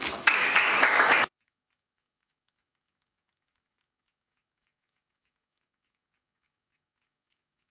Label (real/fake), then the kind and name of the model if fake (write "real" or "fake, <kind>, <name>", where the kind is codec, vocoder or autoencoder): fake, codec, DAC